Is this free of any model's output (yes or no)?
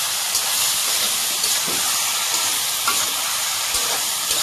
yes